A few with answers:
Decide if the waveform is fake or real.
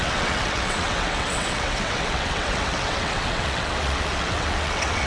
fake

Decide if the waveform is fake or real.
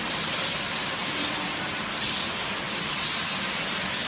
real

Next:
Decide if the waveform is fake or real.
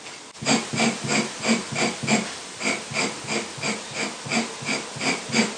real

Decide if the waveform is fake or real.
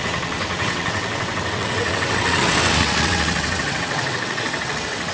fake